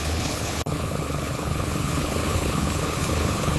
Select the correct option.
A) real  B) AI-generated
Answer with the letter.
B